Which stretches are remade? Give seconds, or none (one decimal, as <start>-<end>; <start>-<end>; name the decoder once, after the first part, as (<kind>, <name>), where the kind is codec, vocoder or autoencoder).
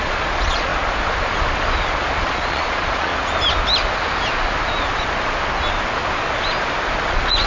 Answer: 0.0-0.7 (vocoder, Vocos); 2.2-3.1; 7.1-7.5